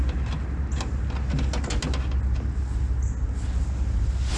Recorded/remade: recorded